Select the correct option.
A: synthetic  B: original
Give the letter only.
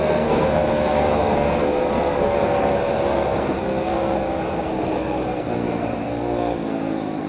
A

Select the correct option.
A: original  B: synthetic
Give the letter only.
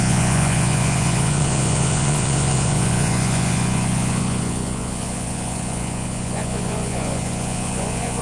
B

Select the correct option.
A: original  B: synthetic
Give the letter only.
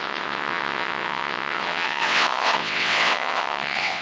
B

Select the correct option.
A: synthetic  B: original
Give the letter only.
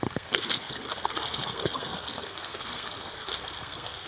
A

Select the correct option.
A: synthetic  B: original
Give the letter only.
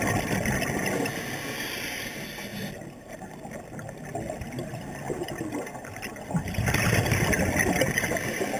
B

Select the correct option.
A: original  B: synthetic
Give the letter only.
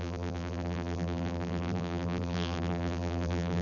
B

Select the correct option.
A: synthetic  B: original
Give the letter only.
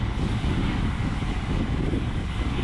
A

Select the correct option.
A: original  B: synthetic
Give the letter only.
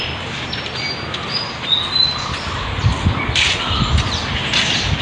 A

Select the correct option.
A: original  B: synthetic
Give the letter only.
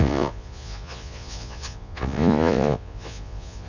B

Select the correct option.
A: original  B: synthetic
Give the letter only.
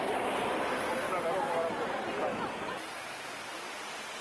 A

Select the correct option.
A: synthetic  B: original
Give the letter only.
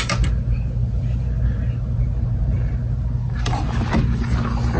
B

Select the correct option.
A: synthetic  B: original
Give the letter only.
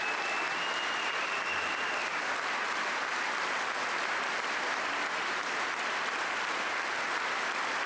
B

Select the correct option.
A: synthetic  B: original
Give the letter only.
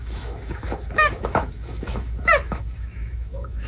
A